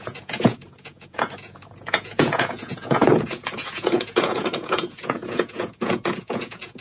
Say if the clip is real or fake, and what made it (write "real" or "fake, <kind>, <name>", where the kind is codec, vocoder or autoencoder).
fake, vocoder, Vocos